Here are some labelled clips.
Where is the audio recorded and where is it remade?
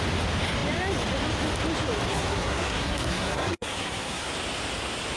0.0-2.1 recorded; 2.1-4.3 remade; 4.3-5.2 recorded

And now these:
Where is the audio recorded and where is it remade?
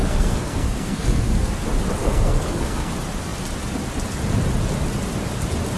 0.0-1.5 remade; 1.5-2.0 recorded; 2.0-2.9 remade; 2.9-5.8 recorded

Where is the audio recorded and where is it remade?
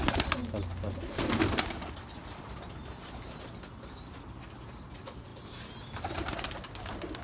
0.0-7.2 recorded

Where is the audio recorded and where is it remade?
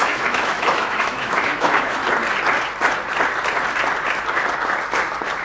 0.0-2.0 remade; 2.0-5.4 recorded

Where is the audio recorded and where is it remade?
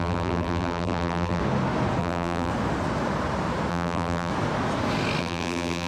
0.0-1.4 remade; 1.4-2.0 recorded; 2.0-2.5 remade; 2.5-3.7 recorded; 3.7-4.3 remade; 4.3-5.2 recorded; 5.2-5.9 remade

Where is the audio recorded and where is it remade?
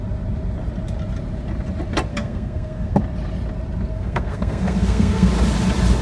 0.0-2.1 recorded; 2.1-3.0 remade; 3.0-3.9 recorded; 3.9-5.3 remade; 5.3-6.0 recorded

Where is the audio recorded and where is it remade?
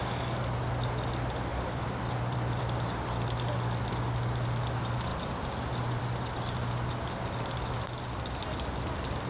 0.0-1.5 recorded; 1.5-2.6 remade; 2.6-9.3 recorded